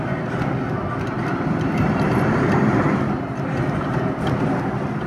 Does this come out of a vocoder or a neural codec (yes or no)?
no